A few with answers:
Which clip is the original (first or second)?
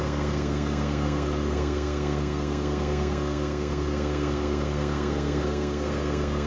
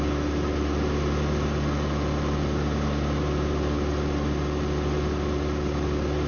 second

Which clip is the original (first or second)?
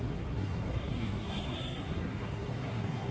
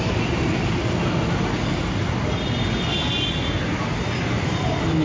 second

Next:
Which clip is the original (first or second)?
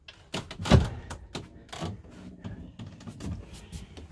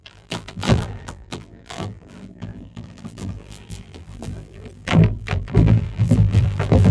first